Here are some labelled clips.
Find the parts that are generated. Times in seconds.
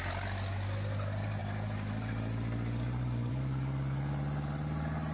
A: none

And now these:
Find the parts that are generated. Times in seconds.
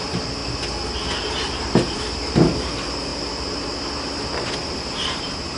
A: 0.0-0.4; 1.3-3.1; 4.1-5.6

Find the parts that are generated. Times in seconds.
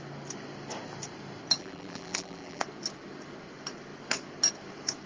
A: 1.6-2.6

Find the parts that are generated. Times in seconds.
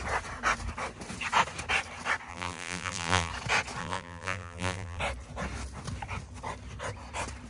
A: 2.3-3.3; 3.8-5.0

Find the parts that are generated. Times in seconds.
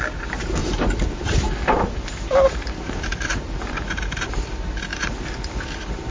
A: 0.6-4.3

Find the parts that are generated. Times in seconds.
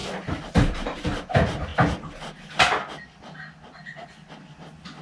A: 0.0-1.2